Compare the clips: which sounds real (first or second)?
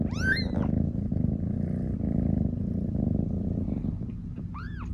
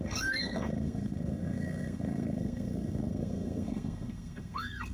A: first